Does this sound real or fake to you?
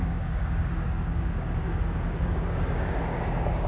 fake